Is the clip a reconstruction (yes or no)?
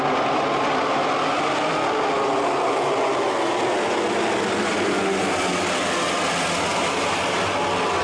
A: no